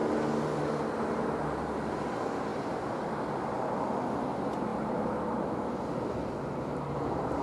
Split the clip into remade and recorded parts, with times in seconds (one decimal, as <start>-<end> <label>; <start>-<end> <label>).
0.0-7.4 recorded

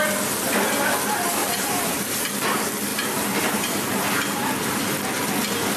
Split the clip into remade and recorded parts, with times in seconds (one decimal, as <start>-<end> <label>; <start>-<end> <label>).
0.0-1.4 recorded; 1.4-2.2 remade; 2.2-2.9 recorded; 2.9-4.8 remade; 4.8-5.8 recorded

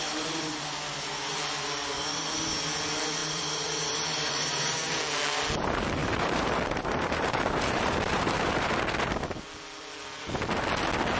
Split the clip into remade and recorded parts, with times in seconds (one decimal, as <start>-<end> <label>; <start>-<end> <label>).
0.0-3.2 recorded; 3.2-5.0 remade; 5.0-6.0 recorded; 6.0-8.7 remade; 8.7-11.2 recorded

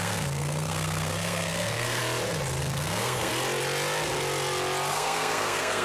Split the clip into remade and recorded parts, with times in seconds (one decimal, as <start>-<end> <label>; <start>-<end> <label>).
0.0-2.0 remade; 2.0-2.6 recorded; 2.6-3.3 remade; 3.3-4.9 recorded; 4.9-5.8 remade